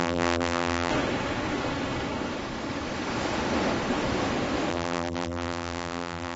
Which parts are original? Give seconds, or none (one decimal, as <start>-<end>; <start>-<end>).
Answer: 0.9-4.7